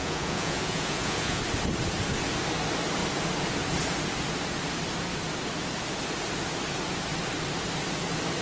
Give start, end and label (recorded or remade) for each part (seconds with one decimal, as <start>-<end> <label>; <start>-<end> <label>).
0.0-1.4 remade; 1.4-8.4 recorded